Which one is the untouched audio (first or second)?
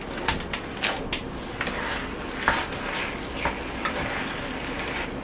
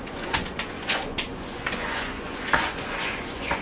first